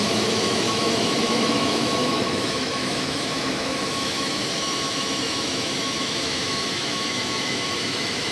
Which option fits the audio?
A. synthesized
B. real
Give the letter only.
A